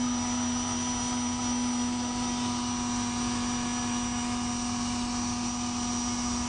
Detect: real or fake real